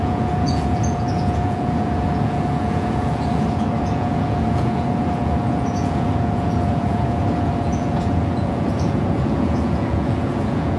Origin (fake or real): fake